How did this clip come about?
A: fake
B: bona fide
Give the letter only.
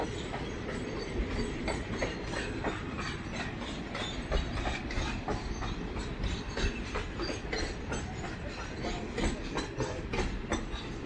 B